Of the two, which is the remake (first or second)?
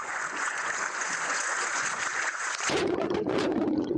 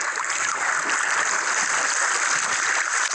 first